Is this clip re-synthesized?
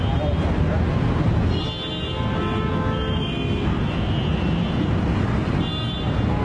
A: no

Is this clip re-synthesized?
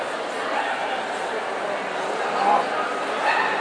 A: no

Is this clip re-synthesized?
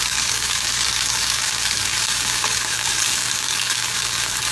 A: yes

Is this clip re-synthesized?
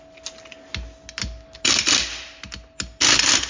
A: no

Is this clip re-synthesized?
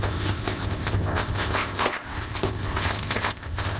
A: yes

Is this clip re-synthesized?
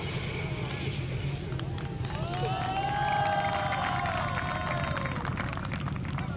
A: no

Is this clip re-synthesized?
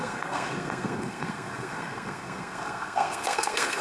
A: yes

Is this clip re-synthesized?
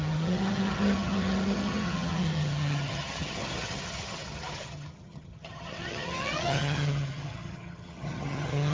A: yes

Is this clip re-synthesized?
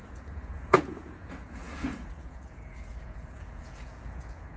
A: yes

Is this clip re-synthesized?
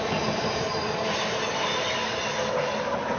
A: no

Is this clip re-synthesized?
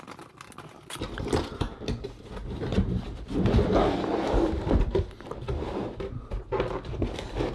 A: no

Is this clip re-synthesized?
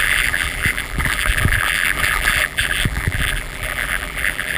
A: yes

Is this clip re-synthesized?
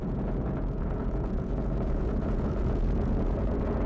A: yes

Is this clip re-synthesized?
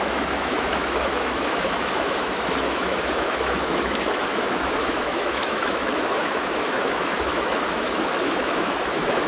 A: yes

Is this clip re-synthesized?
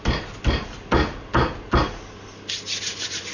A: no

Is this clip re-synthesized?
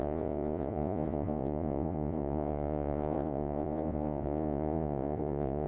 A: yes